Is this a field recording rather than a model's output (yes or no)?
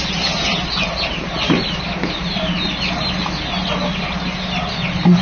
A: yes